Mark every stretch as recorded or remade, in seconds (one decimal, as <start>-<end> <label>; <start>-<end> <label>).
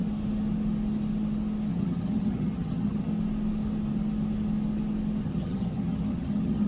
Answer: 0.0-1.7 recorded; 1.7-3.1 remade; 3.1-5.2 recorded; 5.2-6.7 remade